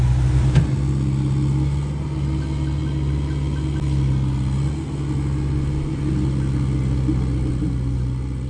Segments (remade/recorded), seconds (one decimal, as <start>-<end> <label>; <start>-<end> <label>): 0.0-8.5 recorded